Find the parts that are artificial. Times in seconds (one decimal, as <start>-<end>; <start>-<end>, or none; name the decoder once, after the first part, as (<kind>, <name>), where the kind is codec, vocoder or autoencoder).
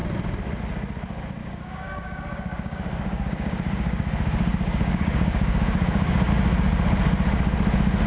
1.4-6.3 (codec, DAC)